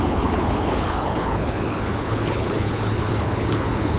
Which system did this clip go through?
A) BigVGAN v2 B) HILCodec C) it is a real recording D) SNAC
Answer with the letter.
B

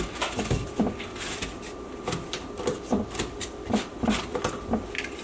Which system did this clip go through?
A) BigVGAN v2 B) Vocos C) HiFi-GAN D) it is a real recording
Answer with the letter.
A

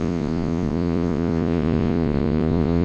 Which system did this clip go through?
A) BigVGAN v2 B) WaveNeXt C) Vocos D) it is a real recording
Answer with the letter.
C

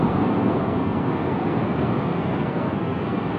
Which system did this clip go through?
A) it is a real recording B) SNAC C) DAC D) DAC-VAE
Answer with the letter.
B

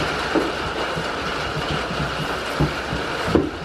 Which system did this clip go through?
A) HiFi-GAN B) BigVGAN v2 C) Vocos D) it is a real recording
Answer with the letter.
D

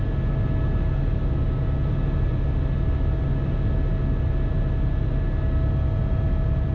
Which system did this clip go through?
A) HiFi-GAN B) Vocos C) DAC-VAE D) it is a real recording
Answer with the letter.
D